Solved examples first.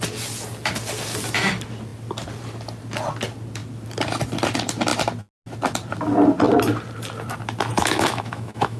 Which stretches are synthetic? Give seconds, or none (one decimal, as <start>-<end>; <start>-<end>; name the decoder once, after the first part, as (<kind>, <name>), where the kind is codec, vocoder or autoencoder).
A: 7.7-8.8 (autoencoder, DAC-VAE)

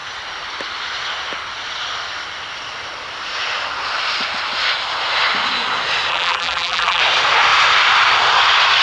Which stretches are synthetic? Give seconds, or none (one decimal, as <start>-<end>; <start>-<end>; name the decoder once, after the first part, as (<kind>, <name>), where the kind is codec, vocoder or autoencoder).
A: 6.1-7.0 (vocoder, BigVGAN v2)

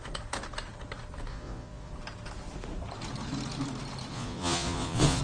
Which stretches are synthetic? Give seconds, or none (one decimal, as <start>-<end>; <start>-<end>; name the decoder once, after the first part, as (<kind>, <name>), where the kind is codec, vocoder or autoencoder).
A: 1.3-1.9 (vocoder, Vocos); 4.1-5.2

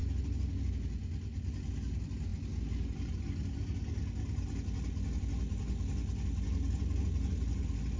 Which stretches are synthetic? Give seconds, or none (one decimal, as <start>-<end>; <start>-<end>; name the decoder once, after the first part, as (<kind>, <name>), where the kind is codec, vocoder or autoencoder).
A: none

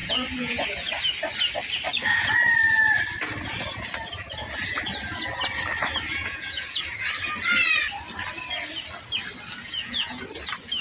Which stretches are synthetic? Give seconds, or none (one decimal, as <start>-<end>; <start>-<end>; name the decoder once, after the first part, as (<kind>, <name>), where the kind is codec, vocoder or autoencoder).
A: 0.0-0.9 (vocoder, Vocos); 6.2-6.8; 9.6-10.2

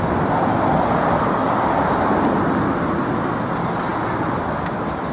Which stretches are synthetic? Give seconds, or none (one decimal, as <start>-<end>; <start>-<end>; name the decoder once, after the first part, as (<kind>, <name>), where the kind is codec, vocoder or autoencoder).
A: none